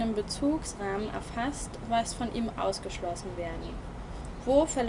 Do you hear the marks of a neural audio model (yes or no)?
no